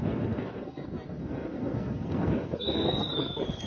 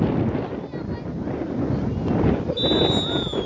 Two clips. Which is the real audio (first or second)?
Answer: second